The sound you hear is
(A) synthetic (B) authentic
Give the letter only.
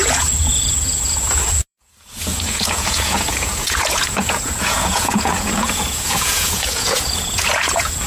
A